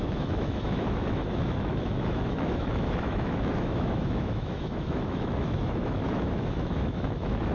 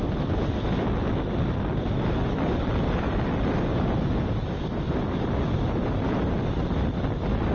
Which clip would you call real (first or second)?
second